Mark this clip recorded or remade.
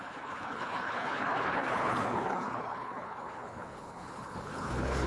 remade